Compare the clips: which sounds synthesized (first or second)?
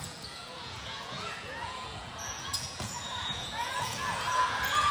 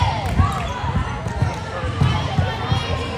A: first